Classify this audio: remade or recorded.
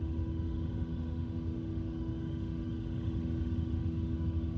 remade